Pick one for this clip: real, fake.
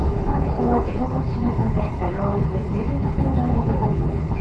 fake